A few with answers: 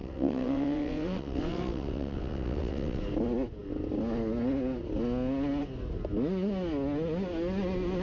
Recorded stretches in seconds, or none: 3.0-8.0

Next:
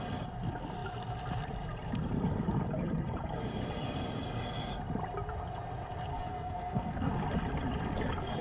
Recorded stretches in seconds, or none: 0.0-6.1; 7.1-8.4

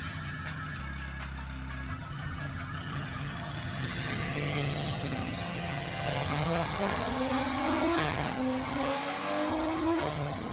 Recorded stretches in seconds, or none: 0.8-1.9; 8.9-9.5

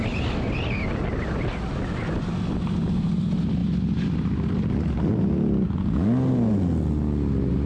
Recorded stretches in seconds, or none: 0.0-7.7

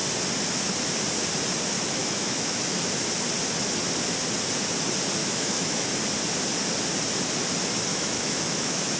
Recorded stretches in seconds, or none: 0.0-2.0; 2.8-5.2; 5.9-7.9

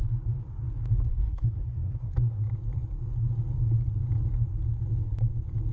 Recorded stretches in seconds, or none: 0.0-1.1; 2.4-5.7

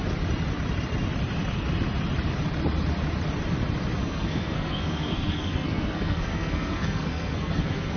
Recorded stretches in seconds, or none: 0.0-4.0

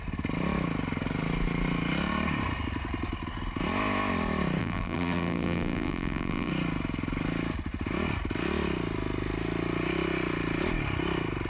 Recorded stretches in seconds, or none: 0.0-4.6; 6.5-11.5